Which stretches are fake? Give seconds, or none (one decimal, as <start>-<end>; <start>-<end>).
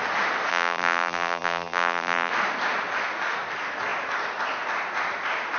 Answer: 0.5-2.3